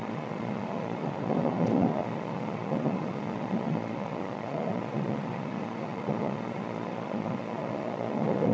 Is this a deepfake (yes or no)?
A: yes